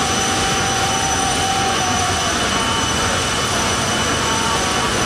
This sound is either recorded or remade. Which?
remade